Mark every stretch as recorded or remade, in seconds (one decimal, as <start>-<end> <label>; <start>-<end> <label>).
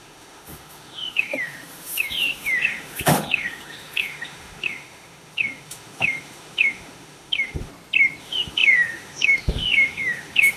0.0-7.7 remade; 7.7-8.2 recorded; 8.2-10.6 remade